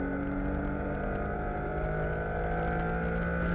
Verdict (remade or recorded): recorded